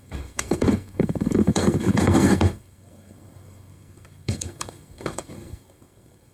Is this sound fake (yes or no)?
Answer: yes